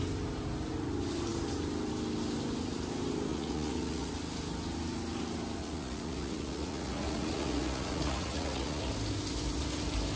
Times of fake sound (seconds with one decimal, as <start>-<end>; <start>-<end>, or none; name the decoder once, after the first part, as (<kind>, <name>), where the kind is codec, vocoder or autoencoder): 3.3-4.1 (vocoder, Vocos); 5.6-8.9